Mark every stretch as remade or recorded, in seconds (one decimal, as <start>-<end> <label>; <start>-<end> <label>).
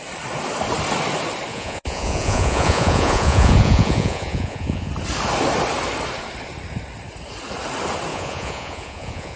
0.0-1.5 recorded; 1.5-4.9 remade; 4.9-8.1 recorded; 8.1-9.4 remade